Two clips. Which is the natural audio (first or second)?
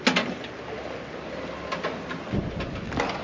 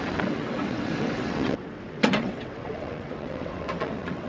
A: first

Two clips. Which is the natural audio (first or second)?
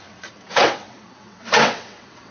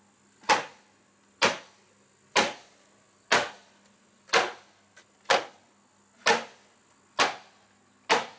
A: second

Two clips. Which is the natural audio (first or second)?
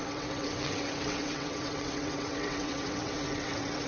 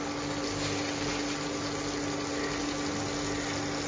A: second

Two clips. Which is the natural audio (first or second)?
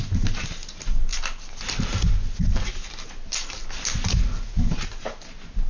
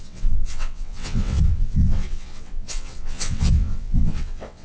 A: first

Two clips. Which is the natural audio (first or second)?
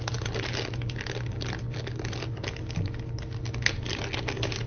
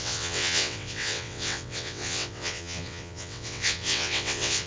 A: first